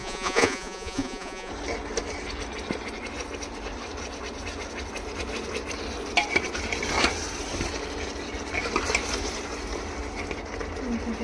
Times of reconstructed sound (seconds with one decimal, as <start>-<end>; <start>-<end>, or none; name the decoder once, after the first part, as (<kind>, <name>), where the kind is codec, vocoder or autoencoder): 0.0-1.5 (vocoder, Vocos)